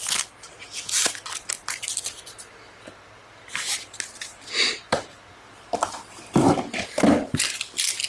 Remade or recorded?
recorded